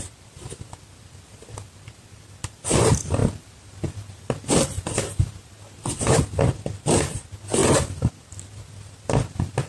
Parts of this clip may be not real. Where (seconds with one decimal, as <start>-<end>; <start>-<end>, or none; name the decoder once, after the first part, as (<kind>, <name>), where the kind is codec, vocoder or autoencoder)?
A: none